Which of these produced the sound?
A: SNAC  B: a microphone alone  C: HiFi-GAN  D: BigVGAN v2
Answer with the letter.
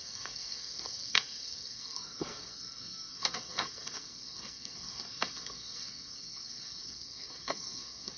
A